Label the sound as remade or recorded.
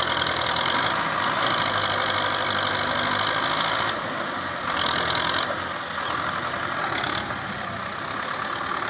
recorded